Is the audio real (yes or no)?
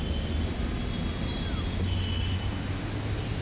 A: yes